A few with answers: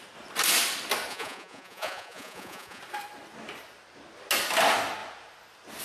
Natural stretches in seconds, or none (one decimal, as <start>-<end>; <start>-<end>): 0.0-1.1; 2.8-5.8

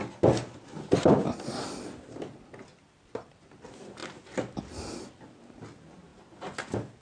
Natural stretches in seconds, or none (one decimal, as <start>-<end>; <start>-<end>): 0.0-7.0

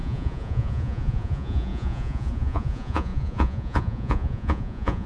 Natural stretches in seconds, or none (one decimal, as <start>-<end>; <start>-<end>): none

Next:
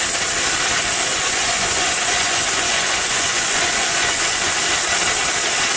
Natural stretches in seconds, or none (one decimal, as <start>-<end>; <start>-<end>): 0.0-1.1; 4.6-5.8

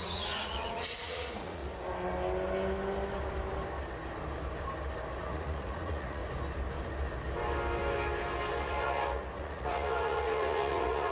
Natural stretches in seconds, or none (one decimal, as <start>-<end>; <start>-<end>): 1.6-5.2; 6.2-8.6